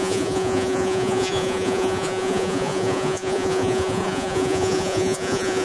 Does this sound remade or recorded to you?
remade